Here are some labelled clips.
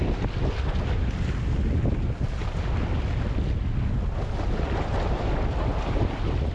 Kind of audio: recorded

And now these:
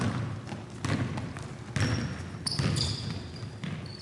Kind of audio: recorded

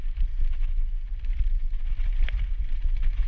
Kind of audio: recorded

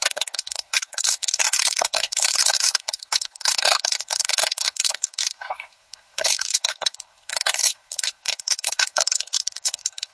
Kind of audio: remade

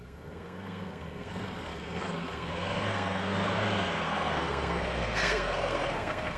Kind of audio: remade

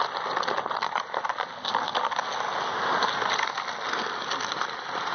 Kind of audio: recorded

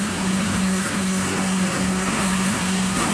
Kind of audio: remade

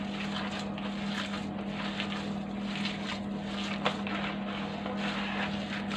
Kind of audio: recorded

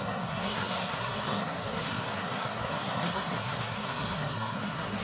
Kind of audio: remade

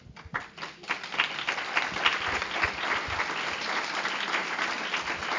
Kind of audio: recorded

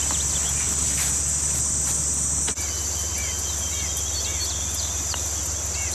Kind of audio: recorded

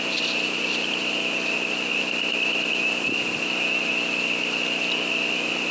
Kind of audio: recorded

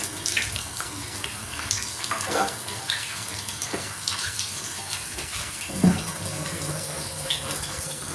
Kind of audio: remade